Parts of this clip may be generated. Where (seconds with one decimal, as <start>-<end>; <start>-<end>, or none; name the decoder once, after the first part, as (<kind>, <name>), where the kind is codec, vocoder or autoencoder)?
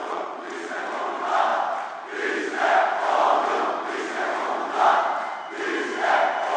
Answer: 0.0-0.8 (vocoder, Vocos)